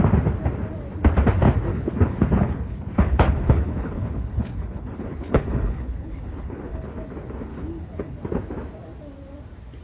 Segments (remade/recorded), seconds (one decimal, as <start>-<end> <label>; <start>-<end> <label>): 0.0-1.7 recorded; 1.7-6.9 remade; 6.9-7.5 recorded; 7.5-8.3 remade; 8.3-9.8 recorded